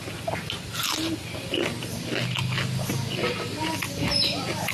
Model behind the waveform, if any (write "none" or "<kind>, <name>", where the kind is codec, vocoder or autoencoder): none